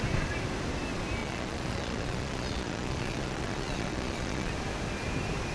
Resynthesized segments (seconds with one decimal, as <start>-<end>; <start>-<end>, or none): 1.2-4.5